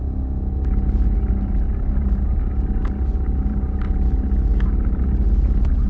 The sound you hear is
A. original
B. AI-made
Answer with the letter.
A